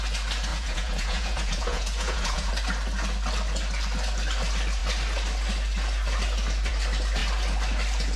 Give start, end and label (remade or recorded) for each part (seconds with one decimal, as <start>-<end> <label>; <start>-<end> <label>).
0.0-0.5 recorded; 0.5-2.5 remade; 2.5-8.2 recorded